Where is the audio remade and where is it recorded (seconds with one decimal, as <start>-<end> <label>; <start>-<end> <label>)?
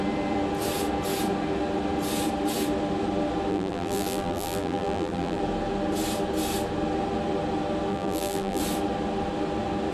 0.0-3.5 recorded; 3.5-5.4 remade; 5.4-7.9 recorded; 7.9-8.6 remade; 8.6-9.9 recorded